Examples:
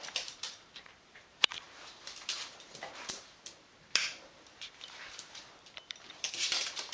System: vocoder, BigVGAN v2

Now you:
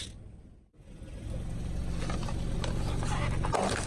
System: none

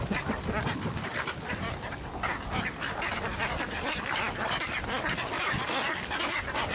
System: none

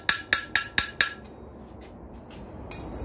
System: none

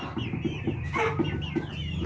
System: none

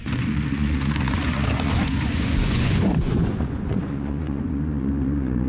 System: vocoder, Vocos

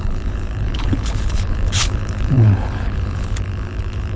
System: codec, HILCodec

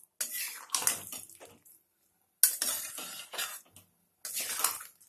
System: none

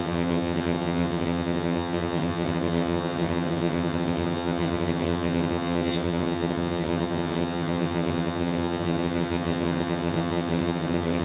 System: vocoder, HiFi-GAN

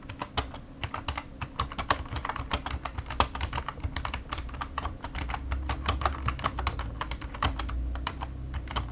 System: none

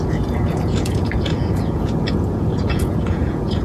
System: vocoder, Vocos